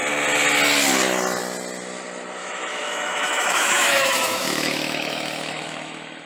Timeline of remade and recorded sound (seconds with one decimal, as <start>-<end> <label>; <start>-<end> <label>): 0.0-2.4 recorded; 2.4-6.3 remade